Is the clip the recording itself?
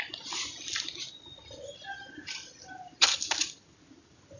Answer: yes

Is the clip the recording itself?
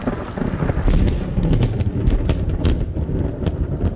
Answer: yes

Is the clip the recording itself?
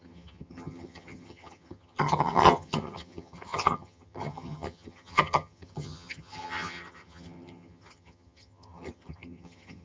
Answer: no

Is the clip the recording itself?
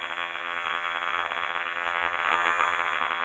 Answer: no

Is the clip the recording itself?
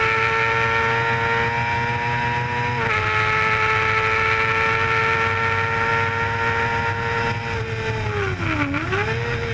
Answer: yes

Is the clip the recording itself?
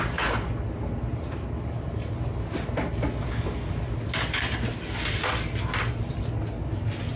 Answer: yes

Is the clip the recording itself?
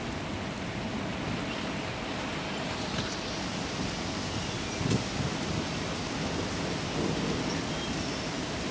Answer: yes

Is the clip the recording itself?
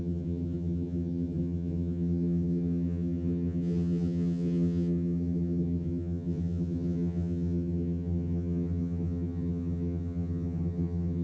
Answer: no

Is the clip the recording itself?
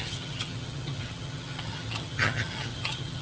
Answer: no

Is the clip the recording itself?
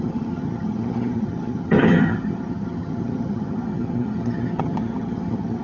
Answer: no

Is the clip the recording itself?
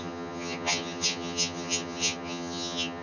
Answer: no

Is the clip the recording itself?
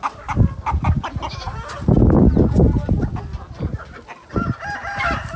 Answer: yes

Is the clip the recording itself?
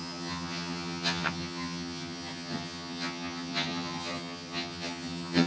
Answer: no